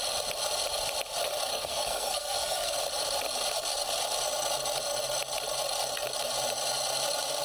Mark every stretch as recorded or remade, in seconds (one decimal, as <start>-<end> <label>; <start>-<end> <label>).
0.0-1.5 recorded; 1.5-2.8 remade; 2.8-7.4 recorded